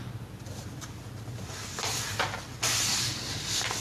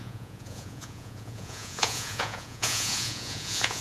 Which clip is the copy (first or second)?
second